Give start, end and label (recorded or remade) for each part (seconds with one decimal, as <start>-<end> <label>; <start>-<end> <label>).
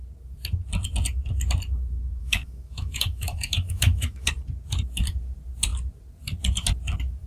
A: 0.0-2.2 recorded; 2.2-4.3 remade; 4.3-7.3 recorded